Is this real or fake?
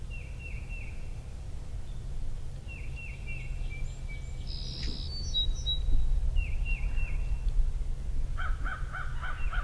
real